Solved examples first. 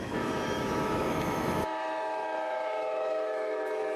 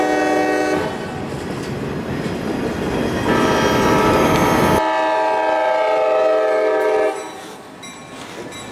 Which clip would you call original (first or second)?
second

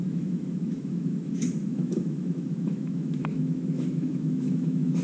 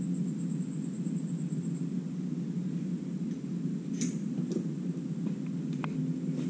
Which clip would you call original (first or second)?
second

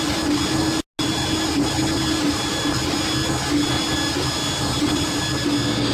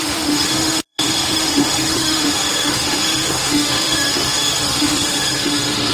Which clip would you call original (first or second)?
first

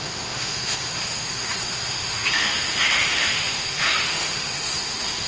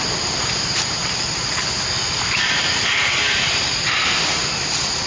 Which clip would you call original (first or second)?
second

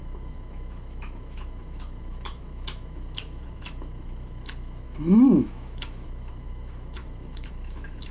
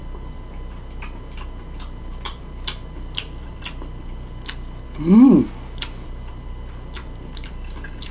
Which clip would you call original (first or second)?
second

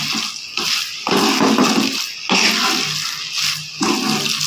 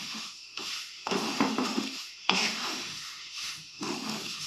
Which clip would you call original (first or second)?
first